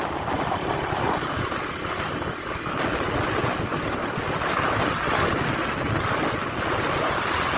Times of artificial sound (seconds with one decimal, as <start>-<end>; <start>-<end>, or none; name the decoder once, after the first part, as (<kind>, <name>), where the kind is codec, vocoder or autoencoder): none